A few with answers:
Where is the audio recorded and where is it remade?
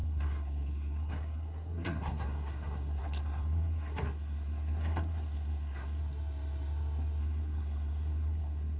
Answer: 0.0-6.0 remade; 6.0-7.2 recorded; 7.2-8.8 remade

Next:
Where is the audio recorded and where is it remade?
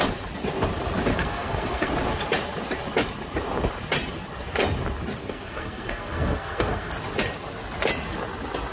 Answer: 0.0-1.1 recorded; 1.1-1.9 remade; 1.9-5.2 recorded; 5.2-6.9 remade; 6.9-8.7 recorded